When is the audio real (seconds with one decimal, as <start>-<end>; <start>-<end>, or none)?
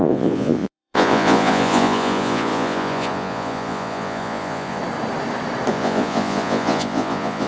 4.8-5.7